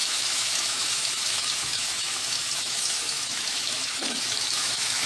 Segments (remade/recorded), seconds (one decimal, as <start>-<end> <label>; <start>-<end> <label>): 0.0-5.1 remade